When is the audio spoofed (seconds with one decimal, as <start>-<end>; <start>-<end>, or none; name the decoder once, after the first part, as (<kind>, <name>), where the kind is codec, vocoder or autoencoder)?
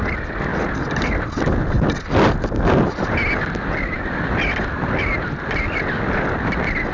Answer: none